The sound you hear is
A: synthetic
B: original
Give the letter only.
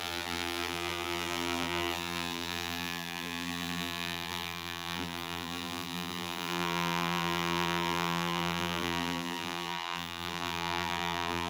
A